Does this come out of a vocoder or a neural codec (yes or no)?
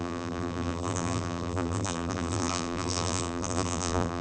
yes